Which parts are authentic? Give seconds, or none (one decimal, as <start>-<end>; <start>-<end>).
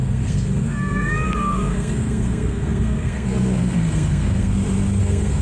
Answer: 4.5-5.0